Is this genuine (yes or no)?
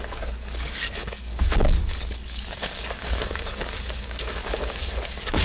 no